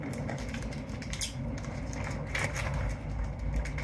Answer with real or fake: real